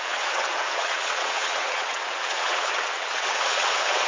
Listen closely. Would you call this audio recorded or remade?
remade